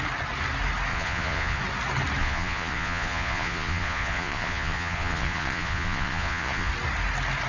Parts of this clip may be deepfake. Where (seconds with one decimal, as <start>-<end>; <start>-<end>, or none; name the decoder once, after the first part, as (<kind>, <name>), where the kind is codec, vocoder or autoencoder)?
0.9-1.6 (vocoder, Vocos); 2.2-6.7